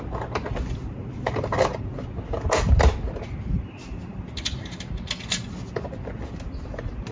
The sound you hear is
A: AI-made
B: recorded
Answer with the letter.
B